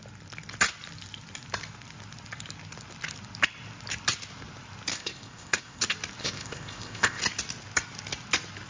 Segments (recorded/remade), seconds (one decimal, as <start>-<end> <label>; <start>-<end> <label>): 0.0-4.9 recorded; 4.9-5.8 remade; 5.8-6.2 recorded; 6.2-7.2 remade; 7.2-8.7 recorded